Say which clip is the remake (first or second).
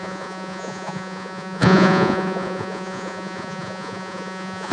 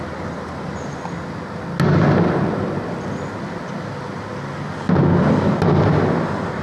first